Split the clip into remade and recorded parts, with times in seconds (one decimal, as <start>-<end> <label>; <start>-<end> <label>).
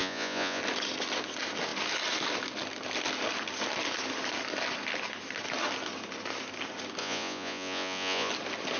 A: 0.0-0.6 remade; 0.6-7.0 recorded; 7.0-8.3 remade; 8.3-8.8 recorded